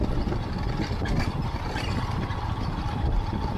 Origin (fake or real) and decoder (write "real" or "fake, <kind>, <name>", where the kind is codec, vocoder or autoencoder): real